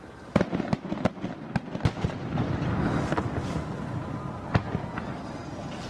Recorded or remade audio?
recorded